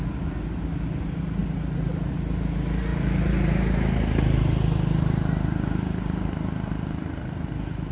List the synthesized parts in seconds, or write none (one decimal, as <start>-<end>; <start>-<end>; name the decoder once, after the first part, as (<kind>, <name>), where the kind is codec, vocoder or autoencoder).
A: none